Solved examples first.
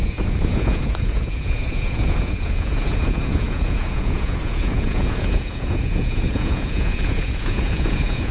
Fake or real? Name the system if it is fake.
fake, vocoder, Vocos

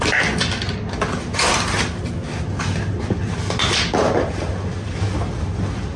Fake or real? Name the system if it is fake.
real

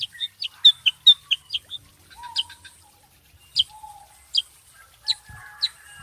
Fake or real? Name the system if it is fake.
real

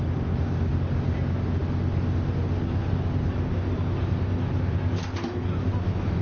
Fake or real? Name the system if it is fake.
real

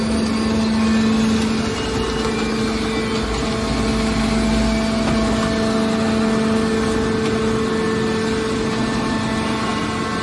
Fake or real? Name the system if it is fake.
real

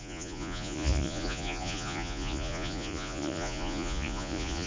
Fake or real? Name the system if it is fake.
fake, vocoder, Vocos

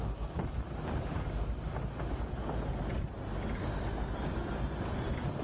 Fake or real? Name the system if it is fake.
real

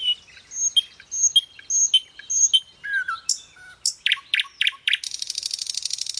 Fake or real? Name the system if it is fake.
real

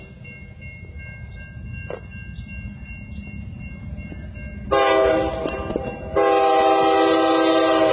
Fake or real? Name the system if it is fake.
real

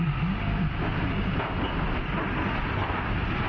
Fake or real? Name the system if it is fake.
real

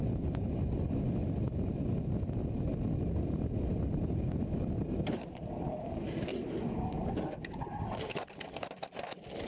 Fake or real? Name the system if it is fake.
real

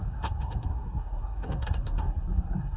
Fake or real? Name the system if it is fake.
fake, codec, SNAC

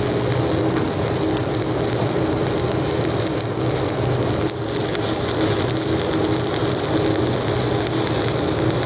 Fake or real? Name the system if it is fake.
real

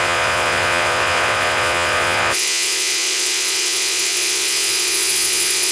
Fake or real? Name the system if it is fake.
fake, vocoder, Vocos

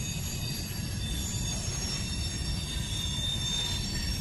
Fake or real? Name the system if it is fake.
fake, vocoder, BigVGAN v2